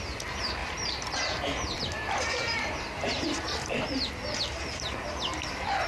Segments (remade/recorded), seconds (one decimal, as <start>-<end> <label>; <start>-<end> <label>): 0.0-0.6 recorded; 0.6-4.1 remade; 4.1-5.9 recorded